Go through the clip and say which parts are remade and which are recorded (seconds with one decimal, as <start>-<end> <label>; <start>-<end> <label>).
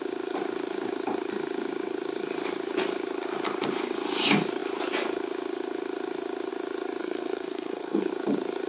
0.0-7.0 recorded; 7.0-8.1 remade; 8.1-8.7 recorded